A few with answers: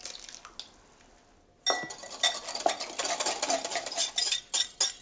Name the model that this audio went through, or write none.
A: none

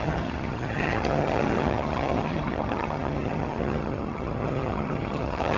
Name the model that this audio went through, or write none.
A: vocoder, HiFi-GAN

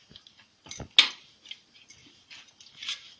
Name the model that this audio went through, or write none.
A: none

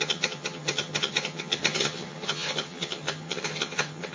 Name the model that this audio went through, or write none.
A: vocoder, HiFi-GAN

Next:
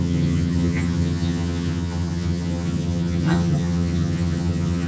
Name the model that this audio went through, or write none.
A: vocoder, HiFi-GAN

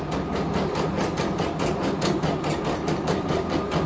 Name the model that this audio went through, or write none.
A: none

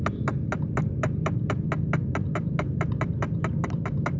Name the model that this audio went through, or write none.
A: none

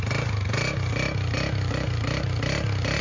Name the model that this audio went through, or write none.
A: none